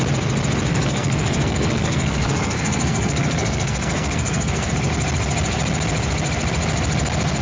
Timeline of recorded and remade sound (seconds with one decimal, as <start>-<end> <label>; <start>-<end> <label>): 0.0-0.7 recorded; 0.7-4.7 remade; 4.7-7.4 recorded